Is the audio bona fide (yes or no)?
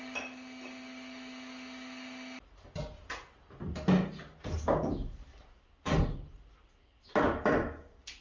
yes